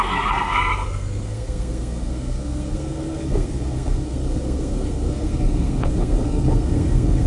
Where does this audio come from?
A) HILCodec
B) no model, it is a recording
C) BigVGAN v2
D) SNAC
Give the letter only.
D